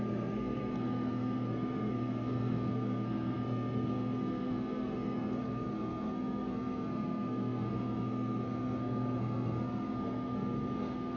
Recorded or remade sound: remade